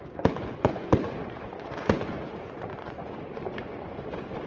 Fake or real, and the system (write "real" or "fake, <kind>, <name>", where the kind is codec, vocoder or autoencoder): fake, vocoder, Vocos